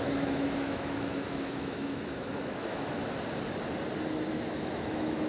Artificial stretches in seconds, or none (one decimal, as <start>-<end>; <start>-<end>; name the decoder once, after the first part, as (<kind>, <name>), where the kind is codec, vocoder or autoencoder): 0.0-3.0 (autoencoder, DAC-VAE); 4.3-5.3